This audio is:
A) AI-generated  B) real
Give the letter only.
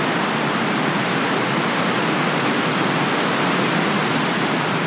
B